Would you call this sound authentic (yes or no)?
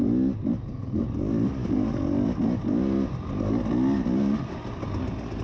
yes